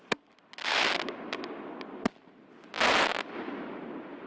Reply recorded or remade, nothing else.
recorded